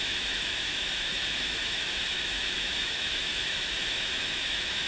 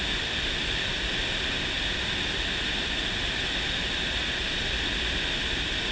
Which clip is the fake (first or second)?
first